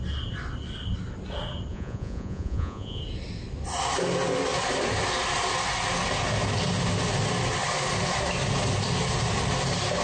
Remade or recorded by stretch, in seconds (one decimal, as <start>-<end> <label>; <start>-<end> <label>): 0.0-1.7 recorded; 1.7-3.0 remade; 3.0-10.0 recorded